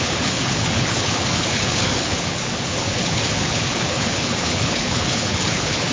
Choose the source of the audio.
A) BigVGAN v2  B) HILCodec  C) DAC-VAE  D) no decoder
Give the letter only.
B